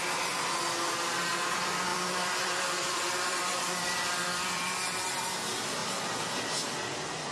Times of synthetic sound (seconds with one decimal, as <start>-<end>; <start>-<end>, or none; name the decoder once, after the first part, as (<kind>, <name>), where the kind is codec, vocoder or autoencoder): 1.9-4.8 (vocoder, BigVGAN v2)